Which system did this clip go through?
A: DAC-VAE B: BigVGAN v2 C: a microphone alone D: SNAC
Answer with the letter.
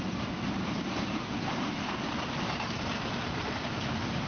B